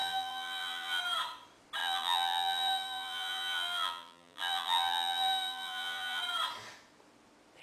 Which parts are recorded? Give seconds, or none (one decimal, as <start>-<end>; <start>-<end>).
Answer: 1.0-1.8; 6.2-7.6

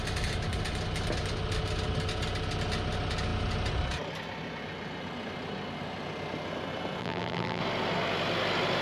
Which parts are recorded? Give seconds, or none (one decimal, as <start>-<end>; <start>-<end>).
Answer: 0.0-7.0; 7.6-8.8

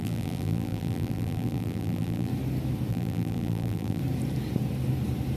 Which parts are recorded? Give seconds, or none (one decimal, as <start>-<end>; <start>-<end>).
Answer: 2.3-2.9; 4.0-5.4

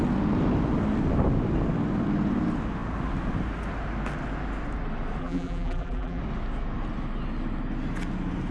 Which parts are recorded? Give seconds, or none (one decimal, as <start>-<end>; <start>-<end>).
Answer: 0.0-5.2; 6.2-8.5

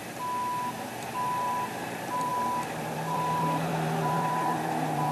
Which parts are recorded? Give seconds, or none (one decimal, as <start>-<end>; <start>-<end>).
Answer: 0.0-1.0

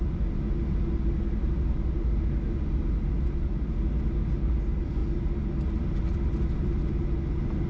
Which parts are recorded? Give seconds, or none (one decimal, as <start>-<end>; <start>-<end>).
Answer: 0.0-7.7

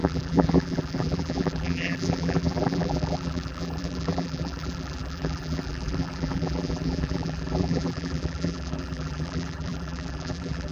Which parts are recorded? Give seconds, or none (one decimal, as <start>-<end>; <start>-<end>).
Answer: none

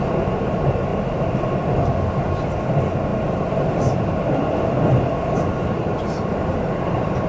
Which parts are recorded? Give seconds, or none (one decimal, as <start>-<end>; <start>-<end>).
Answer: 0.0-3.1; 6.0-7.3